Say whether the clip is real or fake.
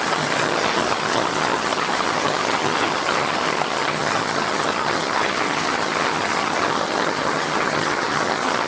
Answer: fake